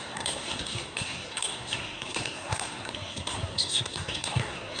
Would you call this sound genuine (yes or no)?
no